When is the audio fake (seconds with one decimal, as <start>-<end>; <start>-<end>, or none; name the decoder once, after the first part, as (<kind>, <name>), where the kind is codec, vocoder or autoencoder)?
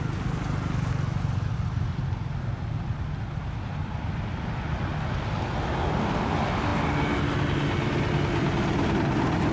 none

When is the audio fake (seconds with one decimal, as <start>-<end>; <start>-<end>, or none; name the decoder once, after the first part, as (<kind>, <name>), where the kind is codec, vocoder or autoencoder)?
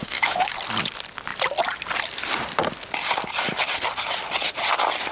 0.0-0.5 (autoencoder, DAC-VAE)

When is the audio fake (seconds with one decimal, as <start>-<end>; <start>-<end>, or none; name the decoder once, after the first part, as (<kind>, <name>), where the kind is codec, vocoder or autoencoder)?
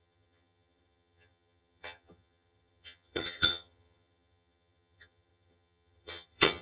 0.0-6.6 (vocoder, HiFi-GAN)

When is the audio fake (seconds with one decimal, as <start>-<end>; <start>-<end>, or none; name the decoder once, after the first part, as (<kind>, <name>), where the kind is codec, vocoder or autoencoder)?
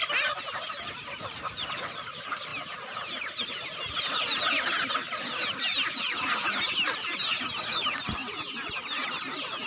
2.5-4.4 (vocoder, BigVGAN v2); 8.2-8.7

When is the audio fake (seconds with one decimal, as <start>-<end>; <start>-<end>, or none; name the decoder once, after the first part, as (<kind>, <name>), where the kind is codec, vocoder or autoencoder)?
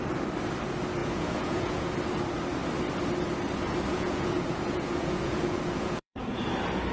1.0-1.9 (vocoder, Vocos); 3.9-6.5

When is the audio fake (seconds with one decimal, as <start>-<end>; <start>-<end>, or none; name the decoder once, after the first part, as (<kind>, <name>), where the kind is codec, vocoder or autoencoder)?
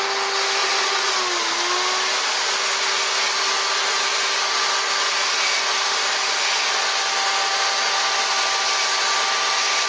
0.6-1.1 (vocoder, Vocos)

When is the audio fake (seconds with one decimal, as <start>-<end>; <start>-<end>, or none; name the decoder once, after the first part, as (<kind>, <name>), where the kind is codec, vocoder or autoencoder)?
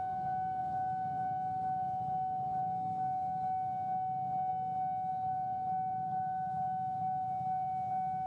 5.1-8.3 (vocoder, Vocos)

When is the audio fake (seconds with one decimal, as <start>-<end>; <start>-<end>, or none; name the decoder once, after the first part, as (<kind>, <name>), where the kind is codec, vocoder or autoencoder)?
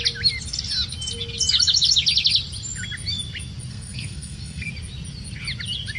3.7-4.7 (codec, SNAC)